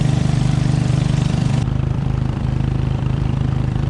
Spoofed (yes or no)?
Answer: yes